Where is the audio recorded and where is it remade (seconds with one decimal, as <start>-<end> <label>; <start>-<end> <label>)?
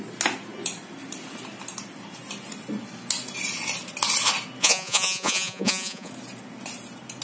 0.0-4.6 recorded; 4.6-6.1 remade; 6.1-7.2 recorded